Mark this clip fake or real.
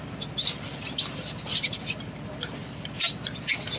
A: real